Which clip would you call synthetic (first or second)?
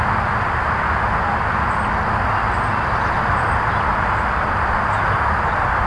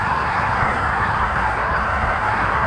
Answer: second